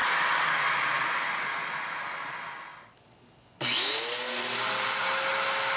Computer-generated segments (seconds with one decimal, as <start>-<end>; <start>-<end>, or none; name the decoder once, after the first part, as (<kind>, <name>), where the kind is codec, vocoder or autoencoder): none